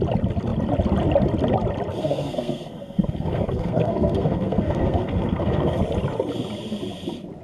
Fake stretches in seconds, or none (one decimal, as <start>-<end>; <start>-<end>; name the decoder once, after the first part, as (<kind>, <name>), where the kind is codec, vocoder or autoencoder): 2.0-5.8 (codec, SNAC)